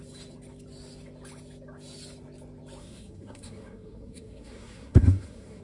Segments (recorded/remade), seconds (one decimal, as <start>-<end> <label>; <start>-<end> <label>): 0.0-2.8 recorded; 2.8-5.6 remade